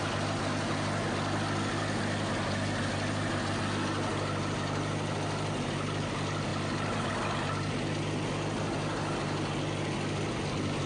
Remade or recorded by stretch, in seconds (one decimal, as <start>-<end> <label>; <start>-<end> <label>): 0.0-10.9 recorded